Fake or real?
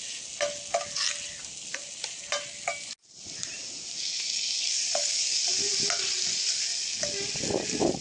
real